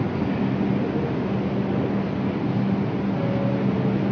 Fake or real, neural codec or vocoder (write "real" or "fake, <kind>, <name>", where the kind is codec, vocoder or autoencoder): real